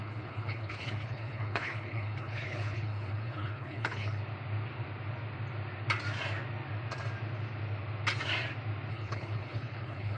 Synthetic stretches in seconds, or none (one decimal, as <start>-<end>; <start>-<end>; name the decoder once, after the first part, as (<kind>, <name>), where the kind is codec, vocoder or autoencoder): 0.0-4.2 (codec, HILCodec); 8.9-10.2